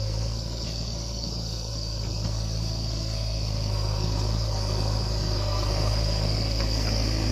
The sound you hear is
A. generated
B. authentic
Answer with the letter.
A